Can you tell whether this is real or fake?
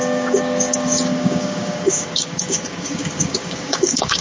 fake